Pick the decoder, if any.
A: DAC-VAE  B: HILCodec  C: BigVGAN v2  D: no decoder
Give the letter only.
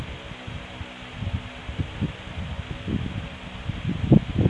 C